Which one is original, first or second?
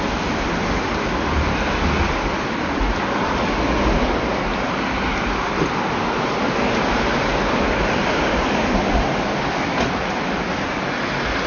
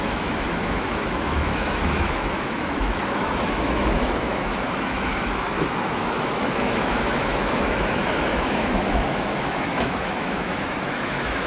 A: first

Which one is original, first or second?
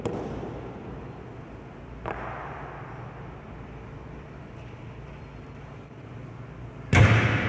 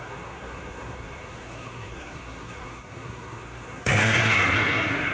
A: first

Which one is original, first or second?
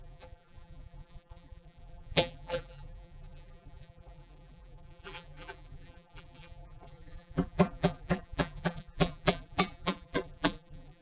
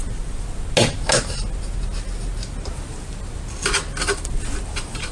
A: second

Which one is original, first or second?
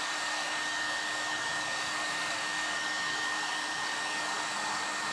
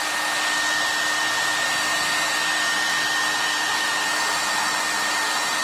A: second